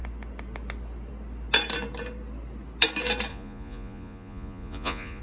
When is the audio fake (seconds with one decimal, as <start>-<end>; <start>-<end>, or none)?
3.3-5.2